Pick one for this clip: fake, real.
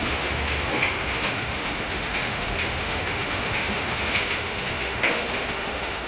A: fake